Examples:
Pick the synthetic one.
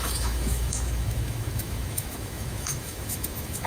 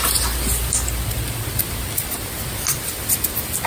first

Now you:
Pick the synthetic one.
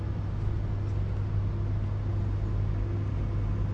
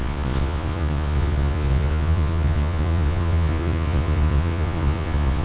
second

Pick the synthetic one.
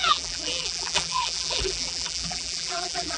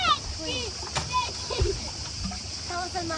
first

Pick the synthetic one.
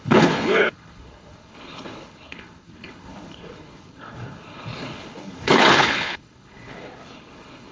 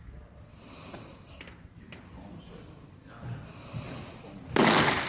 first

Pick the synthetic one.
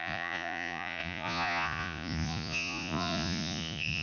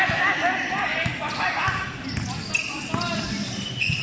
first